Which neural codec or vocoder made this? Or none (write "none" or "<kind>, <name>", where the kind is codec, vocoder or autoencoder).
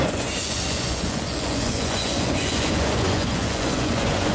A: vocoder, Vocos